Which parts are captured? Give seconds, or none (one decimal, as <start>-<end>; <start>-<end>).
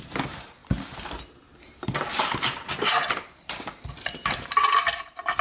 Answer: 0.6-1.7